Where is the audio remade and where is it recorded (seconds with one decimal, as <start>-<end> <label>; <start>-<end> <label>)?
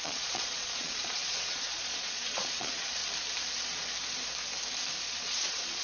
0.0-3.0 remade; 3.0-5.0 recorded; 5.0-5.8 remade